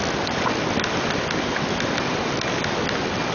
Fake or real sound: real